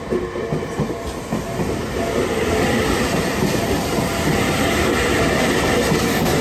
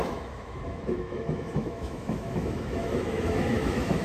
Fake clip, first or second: second